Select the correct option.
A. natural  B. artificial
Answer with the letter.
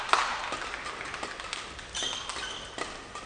A